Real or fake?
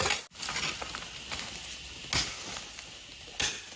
real